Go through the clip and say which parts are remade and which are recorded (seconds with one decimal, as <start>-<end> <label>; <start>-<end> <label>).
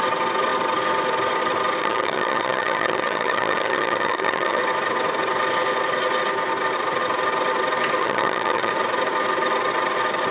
0.0-1.8 recorded; 1.8-4.6 remade; 4.6-8.0 recorded; 8.0-8.7 remade; 8.7-10.3 recorded